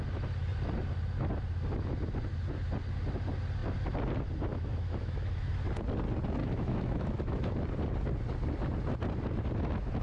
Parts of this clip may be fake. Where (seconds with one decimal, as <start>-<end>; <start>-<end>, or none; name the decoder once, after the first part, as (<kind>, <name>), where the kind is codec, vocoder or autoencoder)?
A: 4.5-5.5 (autoencoder, DAC-VAE); 6.4-7.5